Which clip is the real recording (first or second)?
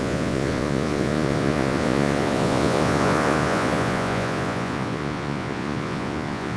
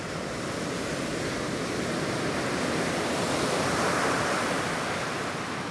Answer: second